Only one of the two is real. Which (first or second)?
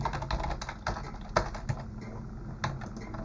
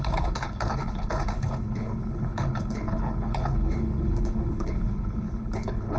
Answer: first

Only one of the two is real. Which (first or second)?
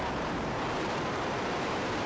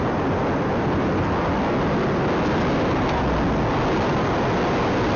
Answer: second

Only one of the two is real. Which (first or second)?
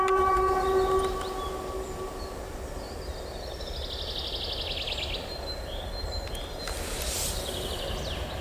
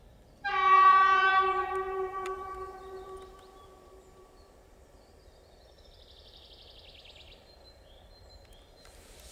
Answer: first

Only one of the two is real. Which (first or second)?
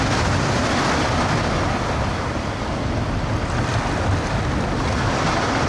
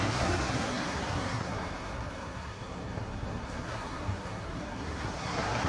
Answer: first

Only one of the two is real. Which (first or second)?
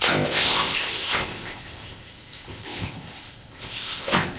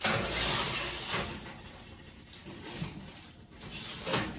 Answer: second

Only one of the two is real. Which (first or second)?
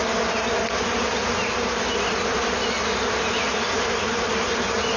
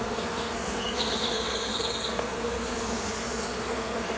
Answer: first